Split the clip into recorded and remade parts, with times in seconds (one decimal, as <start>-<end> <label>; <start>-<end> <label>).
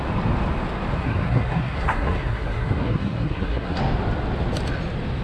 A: 0.0-1.0 recorded; 1.0-3.8 remade; 3.8-5.2 recorded